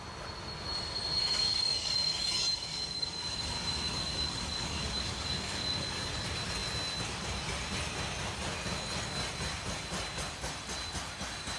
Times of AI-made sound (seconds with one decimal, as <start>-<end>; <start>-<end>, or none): 1.2-6.1